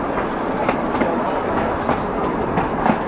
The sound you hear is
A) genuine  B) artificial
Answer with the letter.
A